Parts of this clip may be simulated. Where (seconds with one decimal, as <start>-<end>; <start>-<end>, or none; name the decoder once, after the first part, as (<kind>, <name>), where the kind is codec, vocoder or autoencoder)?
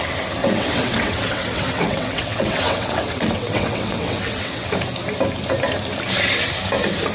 0.4-4.7 (vocoder, WaveNeXt)